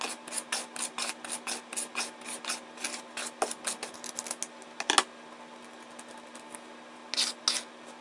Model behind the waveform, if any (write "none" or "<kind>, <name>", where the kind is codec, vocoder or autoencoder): none